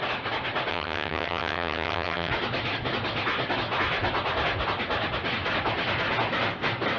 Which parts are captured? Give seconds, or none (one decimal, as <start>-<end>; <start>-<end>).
0.0-0.7; 2.3-7.0